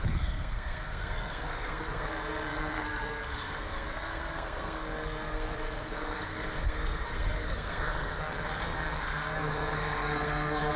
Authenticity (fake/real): fake